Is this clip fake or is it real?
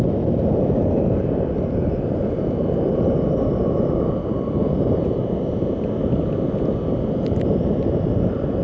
real